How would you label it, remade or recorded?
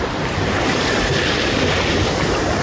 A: remade